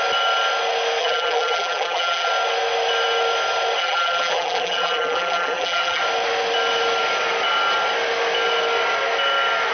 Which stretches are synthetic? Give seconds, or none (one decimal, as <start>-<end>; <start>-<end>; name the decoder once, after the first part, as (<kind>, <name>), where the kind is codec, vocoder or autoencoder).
1.0-2.3 (vocoder, BigVGAN v2); 3.8-6.0